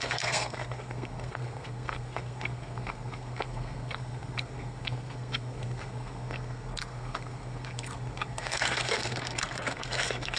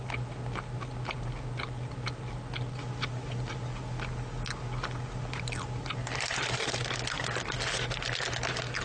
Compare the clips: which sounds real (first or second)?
second